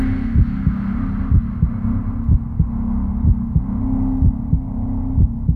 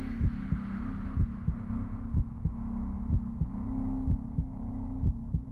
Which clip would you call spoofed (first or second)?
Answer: second